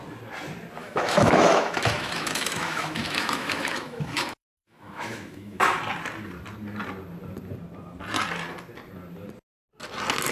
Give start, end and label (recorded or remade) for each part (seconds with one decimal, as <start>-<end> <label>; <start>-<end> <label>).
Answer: 0.0-0.8 recorded; 0.8-5.8 remade; 5.8-10.3 recorded